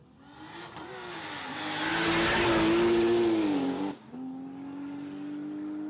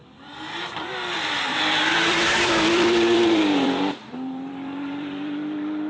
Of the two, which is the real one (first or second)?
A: first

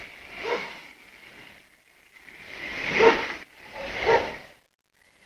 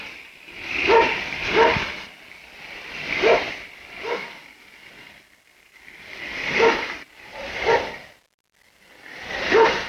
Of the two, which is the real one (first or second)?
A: first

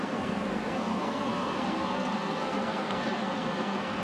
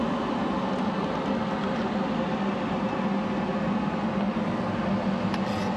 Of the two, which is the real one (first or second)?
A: second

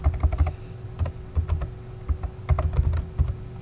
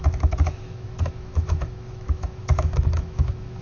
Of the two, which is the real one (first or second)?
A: first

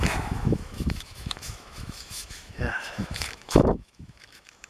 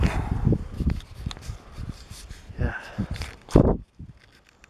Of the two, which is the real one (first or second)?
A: second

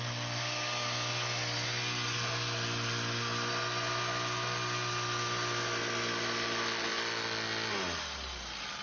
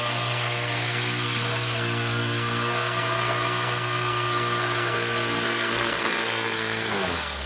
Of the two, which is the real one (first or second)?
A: first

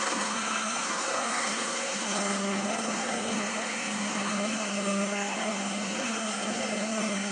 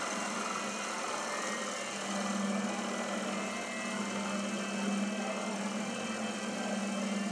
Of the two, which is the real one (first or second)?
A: second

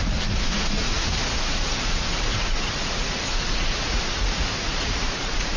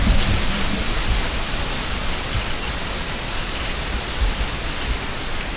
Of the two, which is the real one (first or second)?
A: second